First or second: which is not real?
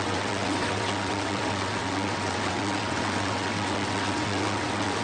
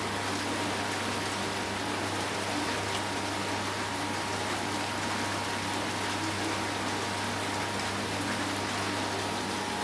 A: first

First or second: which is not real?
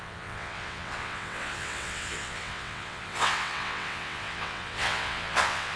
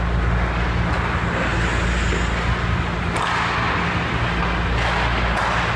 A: first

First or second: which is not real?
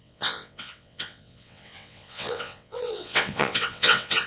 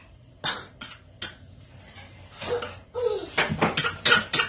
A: first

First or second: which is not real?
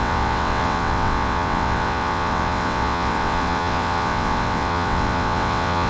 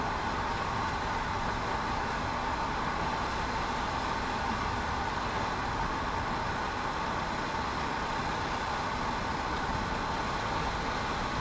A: first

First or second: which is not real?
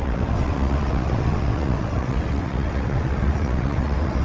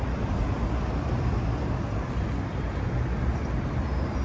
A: first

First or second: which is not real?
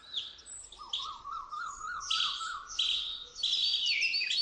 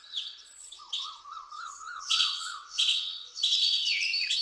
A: second